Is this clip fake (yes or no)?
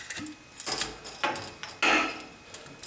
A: no